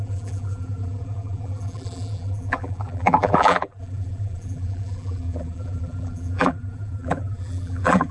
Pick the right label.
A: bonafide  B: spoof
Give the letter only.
B